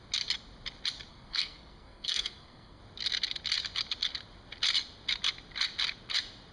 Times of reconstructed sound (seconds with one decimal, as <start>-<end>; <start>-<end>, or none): 1.1-2.8